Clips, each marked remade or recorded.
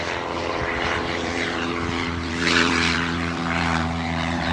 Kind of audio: remade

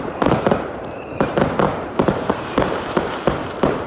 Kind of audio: remade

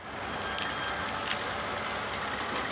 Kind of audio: recorded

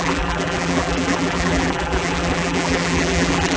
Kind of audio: remade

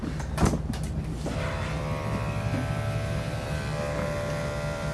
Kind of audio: remade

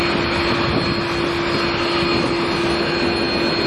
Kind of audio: recorded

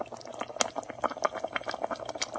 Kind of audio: recorded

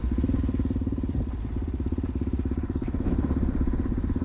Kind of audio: remade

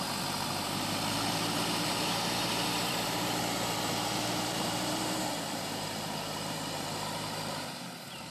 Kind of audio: remade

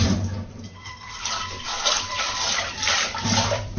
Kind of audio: remade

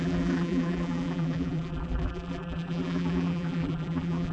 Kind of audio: remade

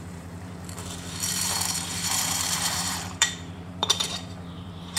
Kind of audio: remade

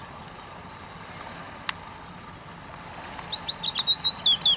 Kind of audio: recorded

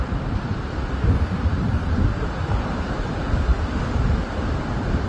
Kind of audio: recorded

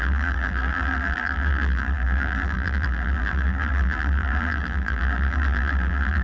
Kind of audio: remade